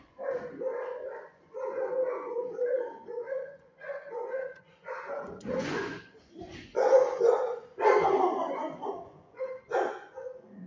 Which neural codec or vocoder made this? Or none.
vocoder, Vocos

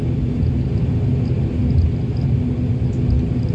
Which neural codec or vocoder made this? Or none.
none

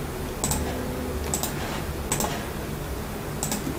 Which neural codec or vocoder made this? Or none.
none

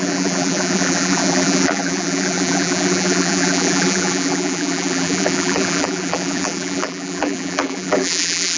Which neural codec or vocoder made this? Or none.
vocoder, BigVGAN v2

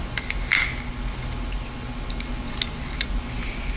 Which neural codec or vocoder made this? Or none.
none